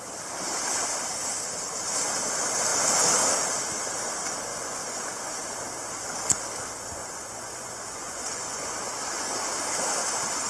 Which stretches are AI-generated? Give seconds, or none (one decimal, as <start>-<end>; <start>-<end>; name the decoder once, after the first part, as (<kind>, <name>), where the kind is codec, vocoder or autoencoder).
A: 4.5-5.4 (vocoder, Vocos); 7.0-9.5